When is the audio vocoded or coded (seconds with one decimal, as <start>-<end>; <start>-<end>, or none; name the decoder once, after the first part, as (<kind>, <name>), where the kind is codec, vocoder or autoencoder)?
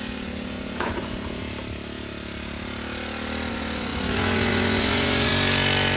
0.0-1.4 (vocoder, Vocos); 3.5-5.3